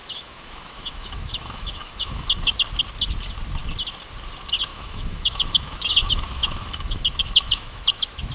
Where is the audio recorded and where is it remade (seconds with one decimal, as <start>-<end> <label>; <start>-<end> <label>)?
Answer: 0.0-2.5 remade; 2.5-4.7 recorded; 4.7-8.3 remade